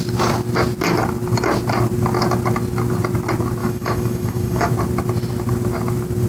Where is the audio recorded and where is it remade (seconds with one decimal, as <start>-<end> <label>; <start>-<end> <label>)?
0.0-3.6 recorded; 3.6-4.7 remade; 4.7-6.3 recorded